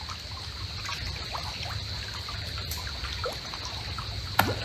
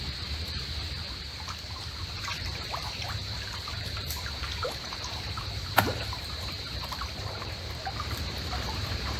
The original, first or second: first